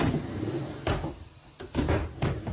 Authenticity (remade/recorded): recorded